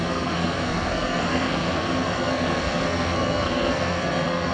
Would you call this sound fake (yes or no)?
yes